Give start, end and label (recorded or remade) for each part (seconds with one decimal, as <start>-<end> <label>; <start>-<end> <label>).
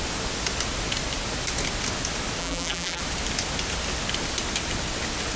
0.0-2.4 recorded; 2.4-3.0 remade; 3.0-5.4 recorded